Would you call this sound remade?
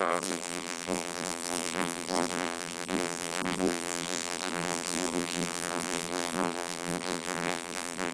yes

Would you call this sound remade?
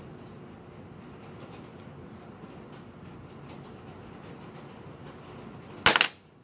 no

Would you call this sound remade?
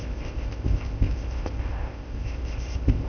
yes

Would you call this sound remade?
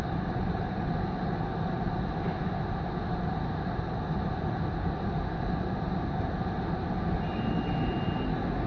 no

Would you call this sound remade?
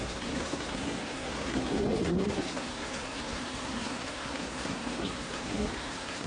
yes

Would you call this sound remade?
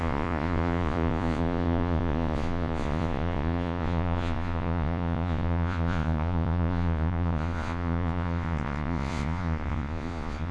yes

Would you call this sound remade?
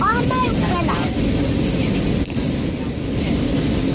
no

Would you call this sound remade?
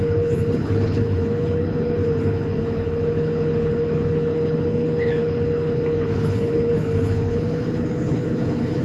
yes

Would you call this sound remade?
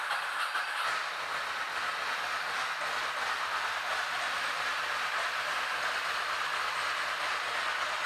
no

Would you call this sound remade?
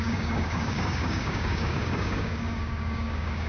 yes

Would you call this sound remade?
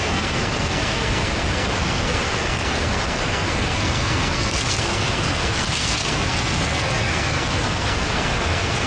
yes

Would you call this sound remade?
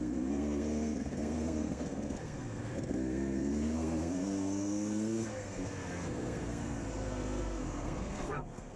yes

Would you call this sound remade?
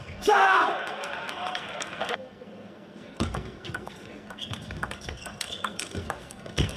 yes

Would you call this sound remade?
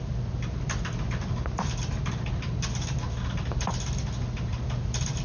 no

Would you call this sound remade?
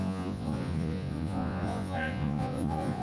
yes